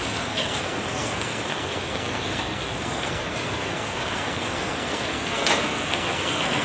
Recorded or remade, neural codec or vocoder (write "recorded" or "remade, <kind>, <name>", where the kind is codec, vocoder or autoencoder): remade, codec, SNAC